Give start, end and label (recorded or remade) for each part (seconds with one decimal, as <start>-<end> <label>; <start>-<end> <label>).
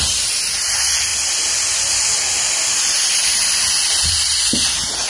0.0-5.1 recorded